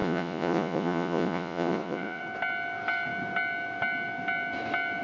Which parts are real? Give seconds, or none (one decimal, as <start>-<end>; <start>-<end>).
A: 2.2-5.0